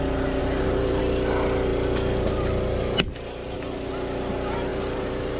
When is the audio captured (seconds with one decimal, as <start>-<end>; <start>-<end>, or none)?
0.0-0.4; 1.0-4.7